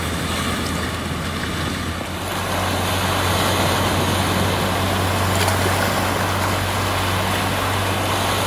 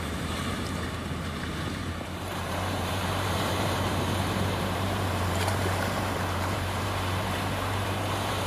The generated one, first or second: second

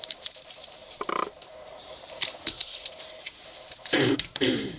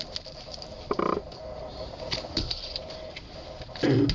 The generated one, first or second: first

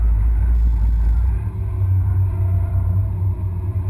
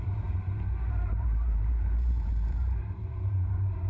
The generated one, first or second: second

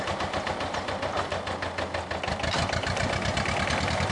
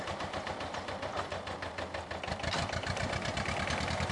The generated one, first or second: second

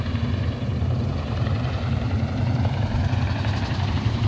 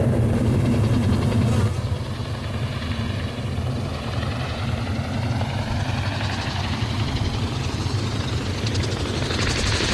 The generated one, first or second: first